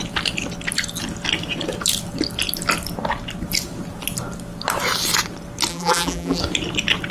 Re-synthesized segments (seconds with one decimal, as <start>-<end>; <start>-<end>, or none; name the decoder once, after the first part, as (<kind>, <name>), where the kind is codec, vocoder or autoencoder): 5.7-6.4 (vocoder, BigVGAN v2)